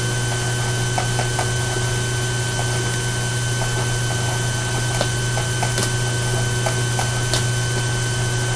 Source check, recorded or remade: recorded